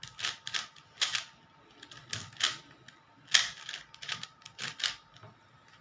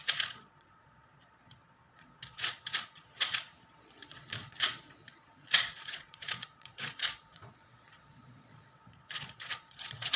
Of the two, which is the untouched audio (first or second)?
first